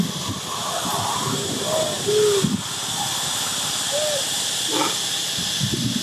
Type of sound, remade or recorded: recorded